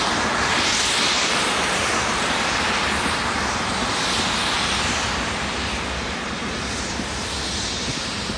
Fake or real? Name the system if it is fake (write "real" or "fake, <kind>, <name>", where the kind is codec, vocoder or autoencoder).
real